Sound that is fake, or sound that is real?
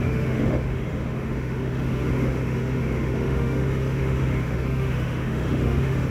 fake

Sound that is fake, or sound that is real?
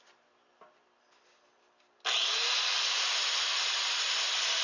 real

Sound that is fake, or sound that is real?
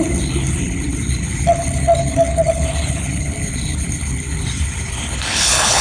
fake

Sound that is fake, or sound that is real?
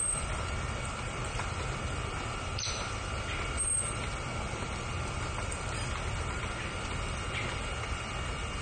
fake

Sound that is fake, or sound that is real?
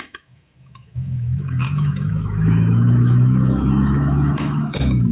fake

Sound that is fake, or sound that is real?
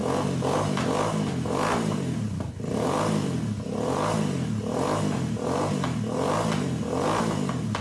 real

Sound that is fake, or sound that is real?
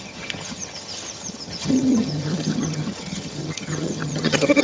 fake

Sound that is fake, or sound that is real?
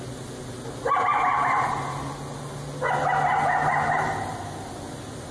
real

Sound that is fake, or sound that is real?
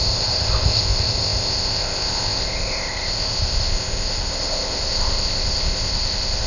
fake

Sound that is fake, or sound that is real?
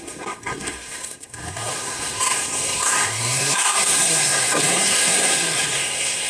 fake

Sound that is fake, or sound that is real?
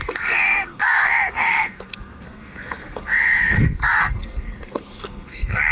fake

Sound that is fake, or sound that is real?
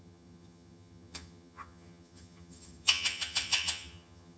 fake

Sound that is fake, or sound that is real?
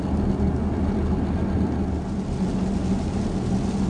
real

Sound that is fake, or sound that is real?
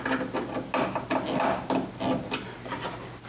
real